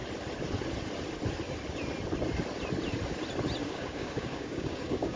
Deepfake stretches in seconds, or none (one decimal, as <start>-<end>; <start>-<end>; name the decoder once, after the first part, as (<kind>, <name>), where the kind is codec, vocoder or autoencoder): 3.6-5.2 (codec, DAC)